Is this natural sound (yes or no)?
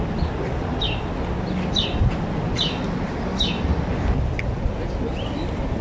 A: yes